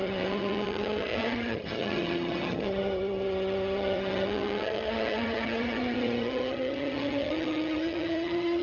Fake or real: fake